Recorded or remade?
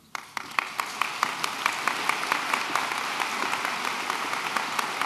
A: recorded